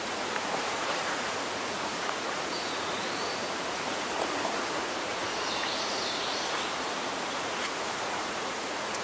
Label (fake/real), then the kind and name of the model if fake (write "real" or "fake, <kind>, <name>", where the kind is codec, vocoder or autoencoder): fake, vocoder, Vocos